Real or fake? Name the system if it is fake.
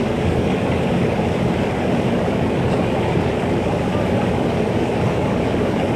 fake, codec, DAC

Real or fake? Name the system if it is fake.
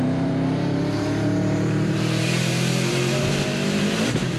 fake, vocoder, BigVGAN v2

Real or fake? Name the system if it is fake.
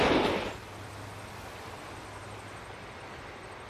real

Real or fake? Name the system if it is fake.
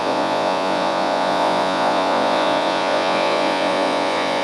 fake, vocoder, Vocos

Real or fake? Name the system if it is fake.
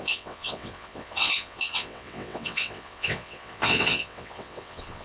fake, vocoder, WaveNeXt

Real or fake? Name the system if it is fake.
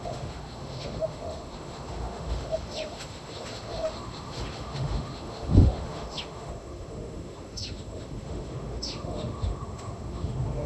fake, autoencoder, DAC-VAE